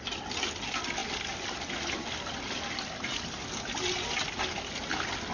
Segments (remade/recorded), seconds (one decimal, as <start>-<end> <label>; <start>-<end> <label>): 0.0-5.3 recorded